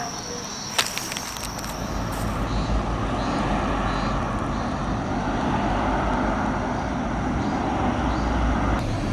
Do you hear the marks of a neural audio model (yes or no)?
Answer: no